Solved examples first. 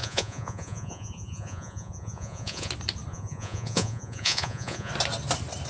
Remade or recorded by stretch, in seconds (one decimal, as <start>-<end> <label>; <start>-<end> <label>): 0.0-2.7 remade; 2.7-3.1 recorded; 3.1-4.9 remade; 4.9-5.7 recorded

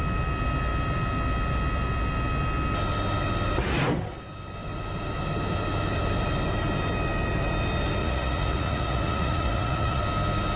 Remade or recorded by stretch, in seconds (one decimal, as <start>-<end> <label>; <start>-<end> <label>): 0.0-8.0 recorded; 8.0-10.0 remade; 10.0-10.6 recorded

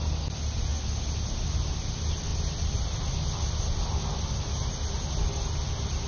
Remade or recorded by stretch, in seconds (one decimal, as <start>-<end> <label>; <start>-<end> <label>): 0.0-6.1 recorded

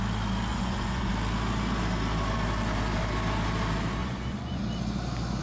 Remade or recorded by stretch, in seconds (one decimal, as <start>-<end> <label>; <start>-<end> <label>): 0.0-0.5 recorded; 0.5-1.1 remade; 1.1-4.0 recorded; 4.0-4.6 remade; 4.6-5.4 recorded

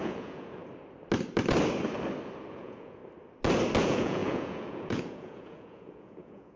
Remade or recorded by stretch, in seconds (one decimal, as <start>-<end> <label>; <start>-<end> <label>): 0.0-0.6 remade; 0.6-2.5 recorded; 2.5-3.0 remade; 3.0-3.8 recorded; 3.8-6.6 remade

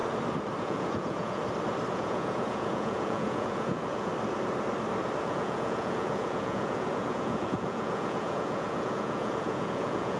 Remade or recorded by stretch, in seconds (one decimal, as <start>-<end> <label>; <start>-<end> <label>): 0.0-0.6 recorded; 0.6-1.4 remade; 1.4-1.9 recorded; 1.9-4.1 remade; 4.1-5.2 recorded; 5.2-10.2 remade

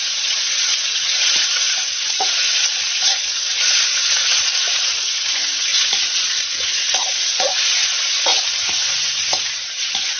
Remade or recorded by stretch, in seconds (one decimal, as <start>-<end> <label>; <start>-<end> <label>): 0.0-8.3 remade; 8.3-8.9 recorded; 8.9-10.2 remade